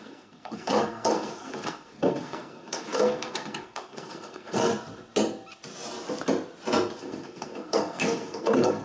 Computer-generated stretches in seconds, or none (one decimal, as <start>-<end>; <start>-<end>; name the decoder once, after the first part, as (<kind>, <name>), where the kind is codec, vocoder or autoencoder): 0.0-4.7 (codec, SNAC); 7.0-8.8